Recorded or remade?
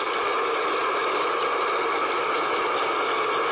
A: recorded